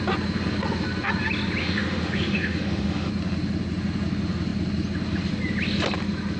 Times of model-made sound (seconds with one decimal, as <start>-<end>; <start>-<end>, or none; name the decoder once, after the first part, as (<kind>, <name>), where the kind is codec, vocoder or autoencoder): 1.6-3.1 (autoencoder, DAC-VAE)